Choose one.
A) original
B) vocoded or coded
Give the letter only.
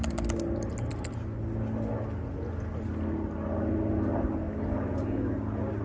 A